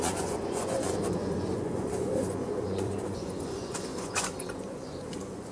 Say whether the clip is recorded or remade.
remade